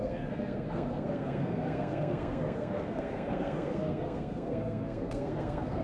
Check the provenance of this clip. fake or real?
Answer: fake